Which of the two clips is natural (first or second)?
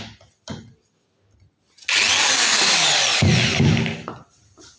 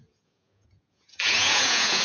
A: first